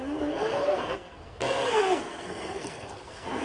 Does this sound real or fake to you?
fake